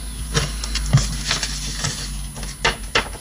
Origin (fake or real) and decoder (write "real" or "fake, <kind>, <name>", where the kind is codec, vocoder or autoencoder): real